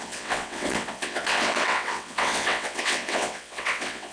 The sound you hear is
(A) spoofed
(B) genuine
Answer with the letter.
A